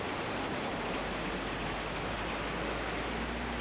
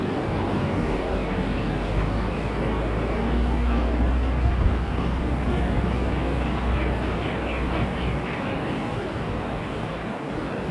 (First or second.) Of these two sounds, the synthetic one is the second